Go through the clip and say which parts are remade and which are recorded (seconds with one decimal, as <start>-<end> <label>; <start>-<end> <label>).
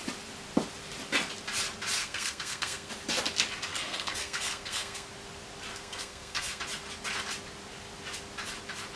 0.0-2.0 recorded; 2.0-2.9 remade; 2.9-3.7 recorded; 3.7-5.1 remade; 5.1-5.7 recorded; 5.7-6.6 remade; 6.6-9.0 recorded